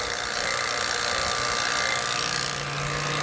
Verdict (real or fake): real